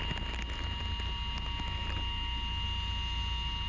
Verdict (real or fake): real